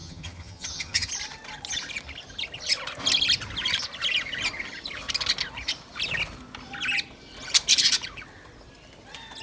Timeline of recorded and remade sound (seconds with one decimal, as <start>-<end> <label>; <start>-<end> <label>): 0.0-1.1 remade; 1.1-9.4 recorded